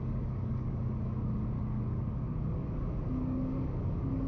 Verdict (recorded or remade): remade